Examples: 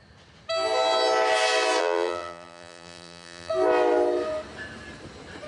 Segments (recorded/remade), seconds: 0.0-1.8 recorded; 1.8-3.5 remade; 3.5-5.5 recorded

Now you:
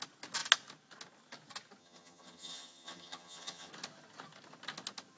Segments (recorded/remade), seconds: 0.0-1.8 recorded; 1.8-3.7 remade; 3.7-5.2 recorded

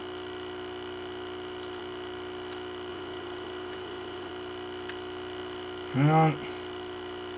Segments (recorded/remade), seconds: 0.0-2.9 recorded; 2.9-4.3 remade; 4.3-7.4 recorded